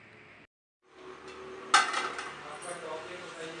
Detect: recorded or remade recorded